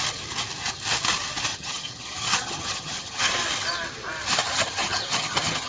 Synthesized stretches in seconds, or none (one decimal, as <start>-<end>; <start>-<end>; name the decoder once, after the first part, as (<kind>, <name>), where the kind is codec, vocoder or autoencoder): 1.5-3.3 (vocoder, HiFi-GAN); 4.4-5.7